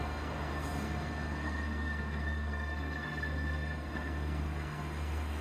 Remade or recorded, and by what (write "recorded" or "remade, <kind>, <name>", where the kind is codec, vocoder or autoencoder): remade, codec, SNAC